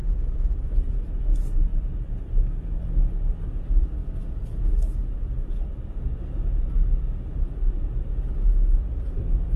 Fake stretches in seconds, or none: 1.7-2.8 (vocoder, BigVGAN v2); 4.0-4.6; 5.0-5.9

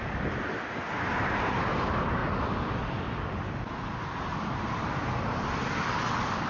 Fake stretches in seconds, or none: 0.0-2.2 (vocoder, BigVGAN v2); 4.0-5.6

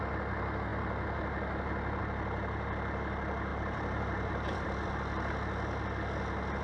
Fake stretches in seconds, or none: 3.5-4.9 (vocoder, BigVGAN v2)

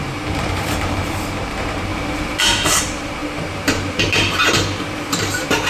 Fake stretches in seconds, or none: 0.0-1.9 (vocoder, BigVGAN v2); 2.4-5.7